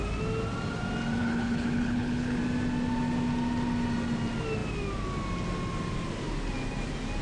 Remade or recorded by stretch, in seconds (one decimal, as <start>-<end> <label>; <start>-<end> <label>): 0.0-1.2 recorded; 1.2-2.4 remade; 2.4-7.2 recorded